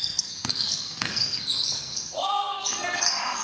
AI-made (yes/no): yes